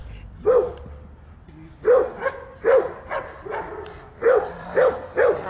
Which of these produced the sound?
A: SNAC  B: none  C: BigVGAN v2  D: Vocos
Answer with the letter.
B